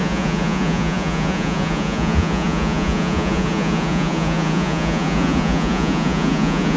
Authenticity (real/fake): fake